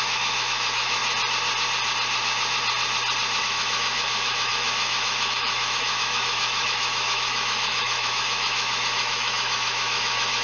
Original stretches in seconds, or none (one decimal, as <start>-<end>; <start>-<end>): 1.0-3.4